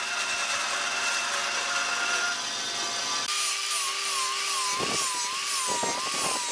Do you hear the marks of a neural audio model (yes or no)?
no